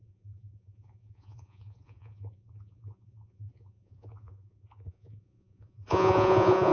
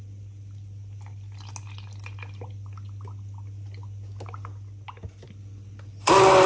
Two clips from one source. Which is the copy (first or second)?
first